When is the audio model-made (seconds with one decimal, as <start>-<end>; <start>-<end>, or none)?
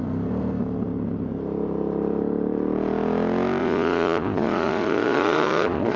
3.6-6.0